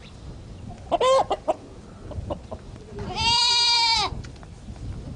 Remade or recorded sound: recorded